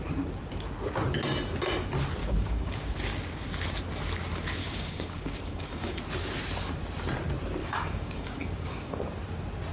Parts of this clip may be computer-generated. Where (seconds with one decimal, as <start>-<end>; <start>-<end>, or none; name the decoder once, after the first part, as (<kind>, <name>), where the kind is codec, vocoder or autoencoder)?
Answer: 2.2-3.0 (codec, DAC); 4.6-6.0; 7.6-9.0